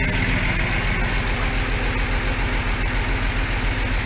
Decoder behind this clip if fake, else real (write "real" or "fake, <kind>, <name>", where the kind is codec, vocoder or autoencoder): real